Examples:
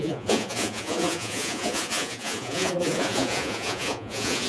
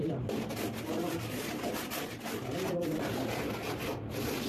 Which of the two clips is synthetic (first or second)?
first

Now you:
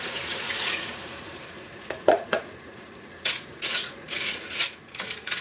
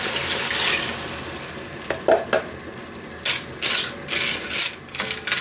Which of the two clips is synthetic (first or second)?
first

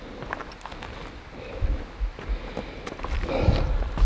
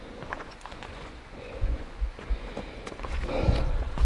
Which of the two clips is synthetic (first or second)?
second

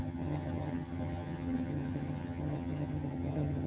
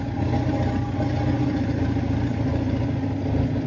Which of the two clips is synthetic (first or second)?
first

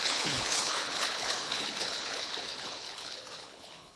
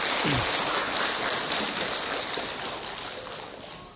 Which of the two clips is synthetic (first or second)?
first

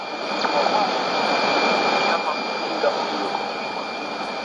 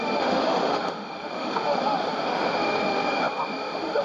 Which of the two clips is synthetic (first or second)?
second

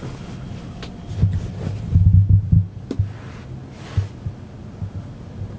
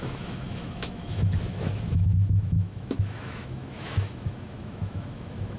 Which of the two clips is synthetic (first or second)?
second